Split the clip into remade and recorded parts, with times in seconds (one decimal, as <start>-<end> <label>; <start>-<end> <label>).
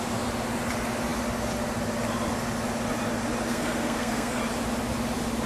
0.0-3.5 recorded; 3.5-4.4 remade; 4.4-5.5 recorded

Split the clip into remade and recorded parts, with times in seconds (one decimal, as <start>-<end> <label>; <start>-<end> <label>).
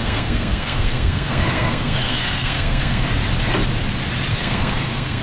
0.0-3.1 remade; 3.1-4.3 recorded; 4.3-5.2 remade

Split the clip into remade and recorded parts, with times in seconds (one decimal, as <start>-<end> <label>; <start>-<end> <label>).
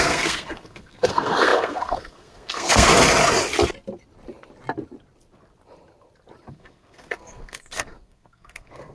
0.0-2.9 remade; 2.9-6.5 recorded; 6.5-8.9 remade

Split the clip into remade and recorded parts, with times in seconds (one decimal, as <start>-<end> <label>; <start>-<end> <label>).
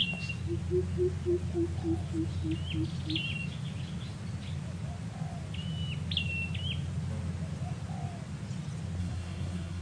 0.0-9.0 recorded; 9.0-9.8 remade